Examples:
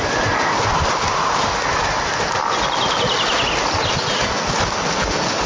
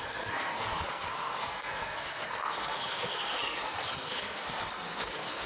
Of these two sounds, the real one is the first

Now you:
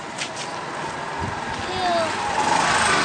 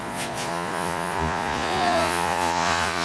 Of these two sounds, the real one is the first